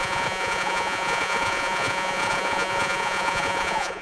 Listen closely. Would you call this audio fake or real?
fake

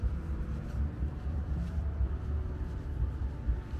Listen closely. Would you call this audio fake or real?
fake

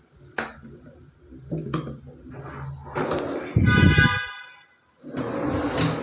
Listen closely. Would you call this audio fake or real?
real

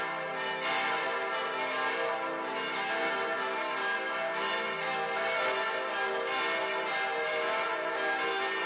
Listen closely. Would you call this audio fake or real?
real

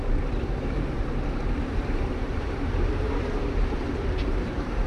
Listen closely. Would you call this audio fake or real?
fake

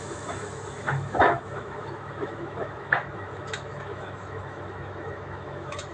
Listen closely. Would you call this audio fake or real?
fake